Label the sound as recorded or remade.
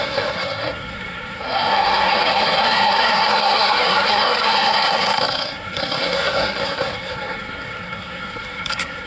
remade